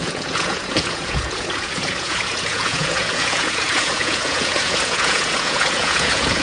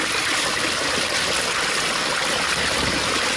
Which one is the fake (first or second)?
first